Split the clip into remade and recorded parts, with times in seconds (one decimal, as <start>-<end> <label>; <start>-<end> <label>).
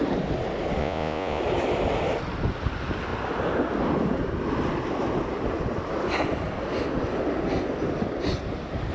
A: 0.0-0.8 recorded; 0.8-1.4 remade; 1.4-8.9 recorded